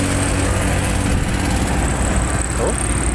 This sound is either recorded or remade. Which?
recorded